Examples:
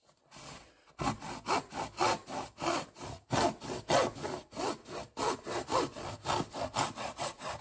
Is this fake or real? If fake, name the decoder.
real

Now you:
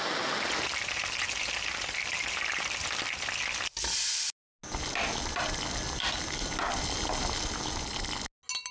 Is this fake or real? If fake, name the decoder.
real